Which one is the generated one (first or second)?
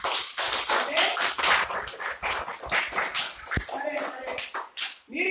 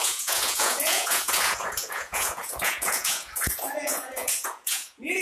second